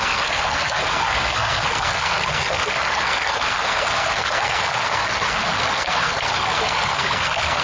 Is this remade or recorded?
remade